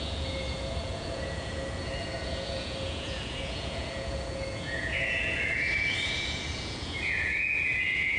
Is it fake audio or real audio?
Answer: fake